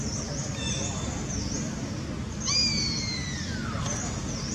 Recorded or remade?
recorded